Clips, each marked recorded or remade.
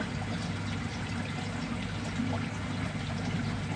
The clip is recorded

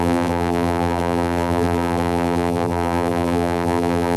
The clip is remade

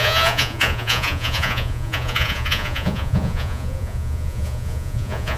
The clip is remade